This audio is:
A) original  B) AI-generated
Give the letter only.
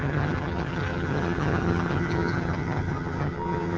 B